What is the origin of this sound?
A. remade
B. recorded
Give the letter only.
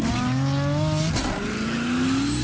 B